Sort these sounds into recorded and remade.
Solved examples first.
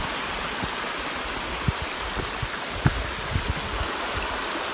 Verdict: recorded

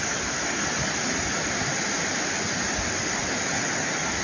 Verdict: recorded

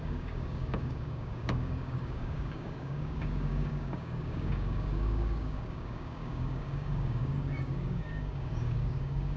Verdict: remade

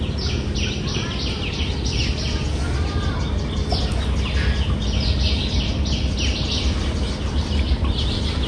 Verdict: recorded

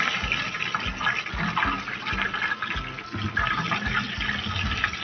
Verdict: recorded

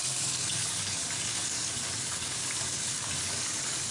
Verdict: remade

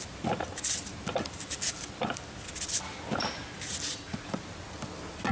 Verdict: recorded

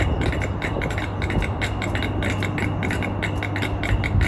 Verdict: recorded